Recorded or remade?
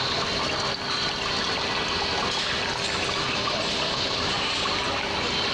recorded